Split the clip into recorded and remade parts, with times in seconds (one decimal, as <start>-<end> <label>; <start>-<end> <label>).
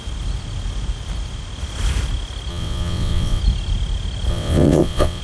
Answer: 0.0-2.5 recorded; 2.5-3.4 remade; 3.4-4.3 recorded; 4.3-5.2 remade